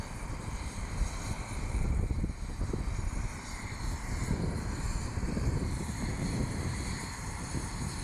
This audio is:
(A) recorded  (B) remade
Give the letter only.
B